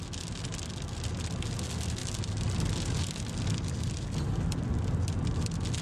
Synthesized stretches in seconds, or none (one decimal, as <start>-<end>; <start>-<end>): none